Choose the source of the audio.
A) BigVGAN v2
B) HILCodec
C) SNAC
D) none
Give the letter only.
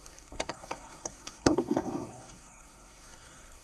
C